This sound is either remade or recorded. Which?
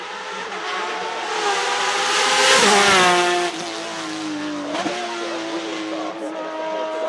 recorded